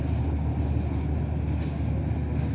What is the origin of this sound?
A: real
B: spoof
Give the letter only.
A